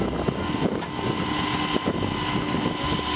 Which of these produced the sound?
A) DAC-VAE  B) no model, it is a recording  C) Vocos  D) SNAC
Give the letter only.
B